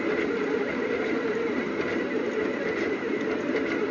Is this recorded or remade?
remade